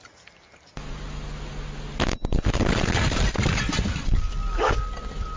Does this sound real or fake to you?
real